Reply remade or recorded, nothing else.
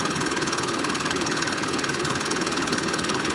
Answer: remade